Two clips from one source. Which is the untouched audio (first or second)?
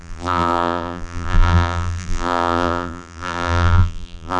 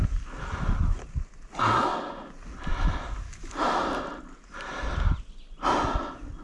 second